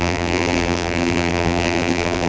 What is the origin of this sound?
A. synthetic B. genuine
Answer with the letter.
A